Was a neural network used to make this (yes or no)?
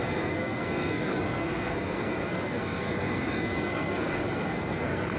yes